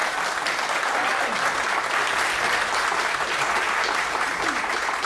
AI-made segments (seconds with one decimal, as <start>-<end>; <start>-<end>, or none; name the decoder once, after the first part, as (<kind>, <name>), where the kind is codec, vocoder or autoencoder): none